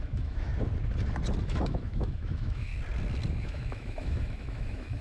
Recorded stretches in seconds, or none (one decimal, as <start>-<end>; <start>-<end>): 0.5-1.4; 2.7-3.3